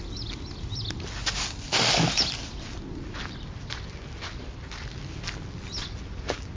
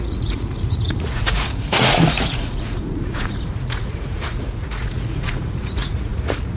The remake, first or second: second